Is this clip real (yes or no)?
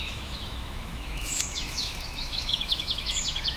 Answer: no